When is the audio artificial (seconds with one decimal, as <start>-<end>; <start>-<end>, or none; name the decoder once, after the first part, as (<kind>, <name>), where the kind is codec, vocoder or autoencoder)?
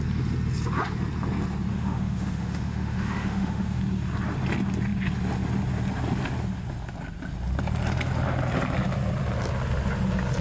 1.7-3.8 (autoencoder, DAC-VAE)